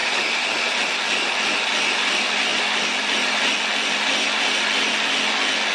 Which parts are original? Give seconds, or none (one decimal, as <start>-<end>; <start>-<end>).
0.0-5.7